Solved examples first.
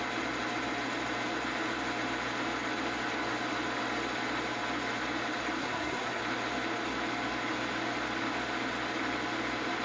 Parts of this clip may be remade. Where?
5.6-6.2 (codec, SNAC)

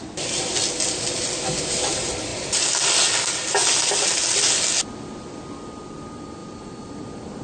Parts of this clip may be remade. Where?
none

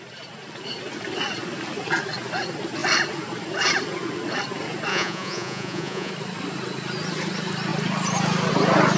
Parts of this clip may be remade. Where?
4.9-6.1 (vocoder, Vocos)